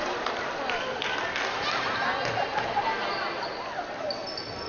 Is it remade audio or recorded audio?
recorded